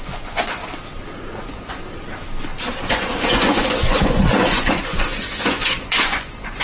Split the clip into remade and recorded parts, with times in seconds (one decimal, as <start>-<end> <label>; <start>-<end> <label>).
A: 0.0-0.6 remade; 0.6-1.2 recorded; 1.2-1.8 remade; 1.8-2.9 recorded; 2.9-6.6 remade